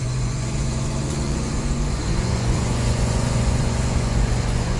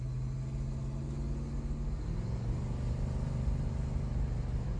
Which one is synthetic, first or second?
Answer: first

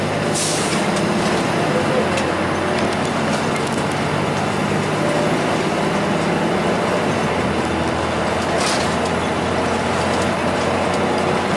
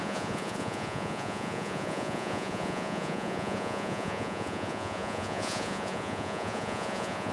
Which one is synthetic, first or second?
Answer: second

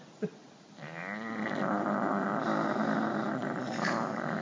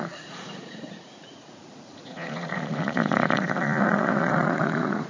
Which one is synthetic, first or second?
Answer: second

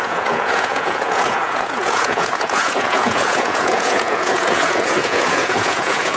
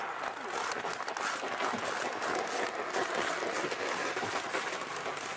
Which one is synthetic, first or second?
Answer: first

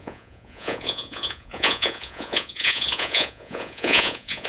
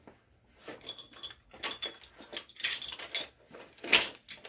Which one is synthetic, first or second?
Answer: first